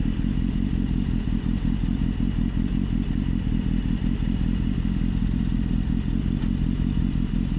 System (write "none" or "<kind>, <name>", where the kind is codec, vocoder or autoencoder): none